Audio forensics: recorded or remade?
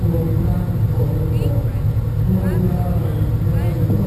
recorded